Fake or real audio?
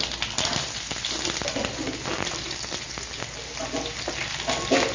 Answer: real